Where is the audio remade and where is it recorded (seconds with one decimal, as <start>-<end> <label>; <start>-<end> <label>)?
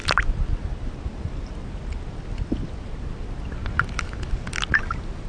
0.0-5.3 recorded